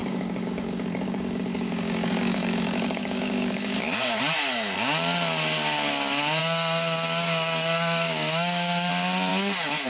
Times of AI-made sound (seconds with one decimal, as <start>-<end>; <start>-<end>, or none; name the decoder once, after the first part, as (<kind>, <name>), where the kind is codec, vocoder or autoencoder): 0.0-4.2 (codec, DAC); 6.4-8.9